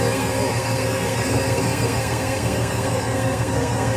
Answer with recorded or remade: remade